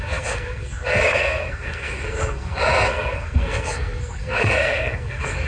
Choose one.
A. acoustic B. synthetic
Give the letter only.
B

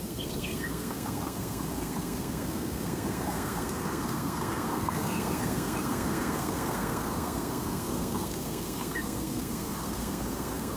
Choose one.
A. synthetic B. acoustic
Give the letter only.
A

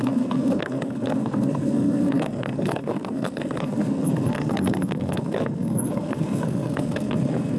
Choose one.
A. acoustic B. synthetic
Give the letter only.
B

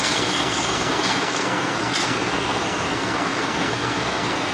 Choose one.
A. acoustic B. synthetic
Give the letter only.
B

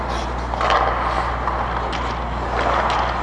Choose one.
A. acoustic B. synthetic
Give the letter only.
A